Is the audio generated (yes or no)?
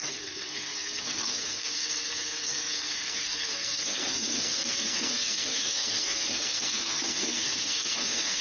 yes